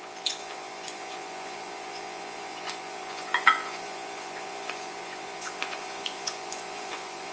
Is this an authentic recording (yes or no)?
no